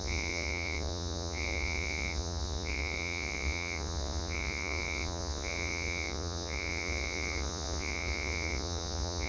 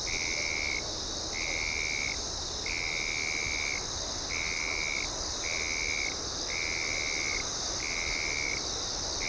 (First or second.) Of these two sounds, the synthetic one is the first